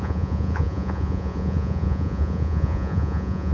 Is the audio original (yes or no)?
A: no